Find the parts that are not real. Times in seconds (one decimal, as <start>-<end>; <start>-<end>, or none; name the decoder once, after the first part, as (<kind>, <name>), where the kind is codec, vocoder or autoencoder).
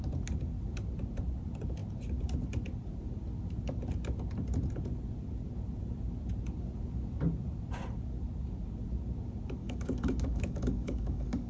9.6-11.5 (codec, DAC)